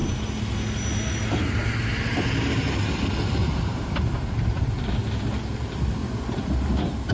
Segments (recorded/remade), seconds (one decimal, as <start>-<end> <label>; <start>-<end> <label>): 0.0-6.0 recorded; 6.0-6.5 remade; 6.5-7.1 recorded